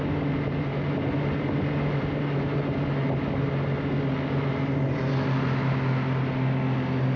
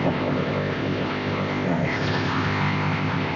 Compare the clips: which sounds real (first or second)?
first